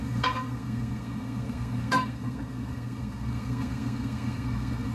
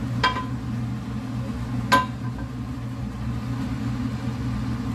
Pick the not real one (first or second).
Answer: first